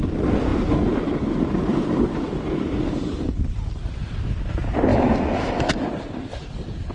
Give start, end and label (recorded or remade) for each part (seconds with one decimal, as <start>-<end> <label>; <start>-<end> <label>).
0.0-4.9 recorded; 4.9-5.7 remade; 5.7-6.9 recorded